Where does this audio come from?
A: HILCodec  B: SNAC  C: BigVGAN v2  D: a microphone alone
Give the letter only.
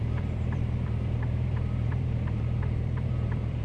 C